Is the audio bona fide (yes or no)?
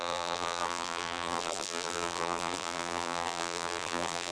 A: no